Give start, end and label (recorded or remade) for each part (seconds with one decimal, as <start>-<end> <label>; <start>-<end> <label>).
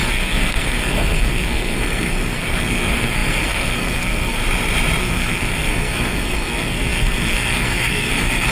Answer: 0.0-4.4 remade; 4.4-5.0 recorded; 5.0-8.5 remade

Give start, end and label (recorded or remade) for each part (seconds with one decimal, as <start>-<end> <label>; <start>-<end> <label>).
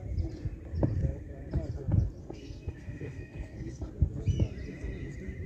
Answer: 0.0-2.2 recorded; 2.2-3.9 remade; 3.9-5.5 recorded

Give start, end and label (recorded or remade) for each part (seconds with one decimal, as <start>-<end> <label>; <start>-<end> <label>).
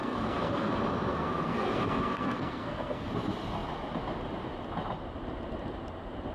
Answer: 0.0-0.7 remade; 0.7-1.1 recorded; 1.1-3.1 remade; 3.1-6.3 recorded